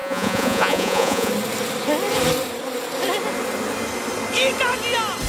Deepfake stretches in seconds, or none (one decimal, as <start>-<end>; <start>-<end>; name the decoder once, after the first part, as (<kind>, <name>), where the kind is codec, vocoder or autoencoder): 0.0-1.3 (vocoder, Vocos)